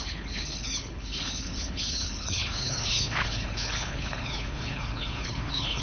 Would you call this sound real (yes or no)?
no